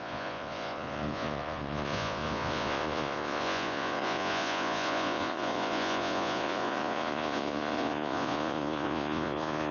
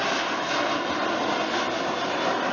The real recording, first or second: second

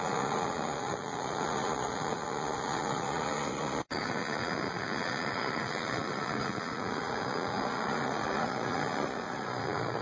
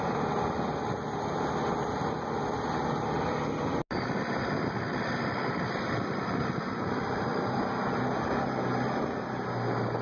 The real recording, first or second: second